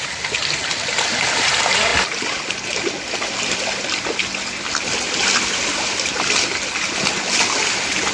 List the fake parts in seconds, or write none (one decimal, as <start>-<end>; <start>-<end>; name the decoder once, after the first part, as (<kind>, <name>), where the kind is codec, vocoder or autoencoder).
none